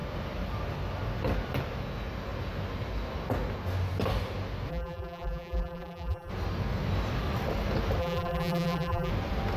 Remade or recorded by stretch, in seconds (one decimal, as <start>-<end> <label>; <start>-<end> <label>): 0.0-4.7 recorded; 4.7-6.3 remade; 6.3-8.0 recorded; 8.0-9.1 remade; 9.1-9.6 recorded